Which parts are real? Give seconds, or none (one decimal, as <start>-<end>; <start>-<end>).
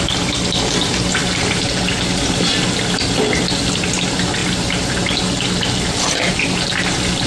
0.0-7.3